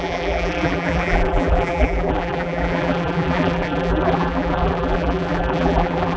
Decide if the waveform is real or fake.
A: fake